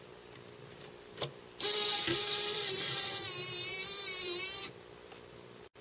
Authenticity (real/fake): fake